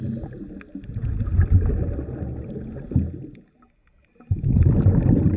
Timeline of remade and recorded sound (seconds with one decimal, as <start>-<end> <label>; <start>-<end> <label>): 0.0-5.4 recorded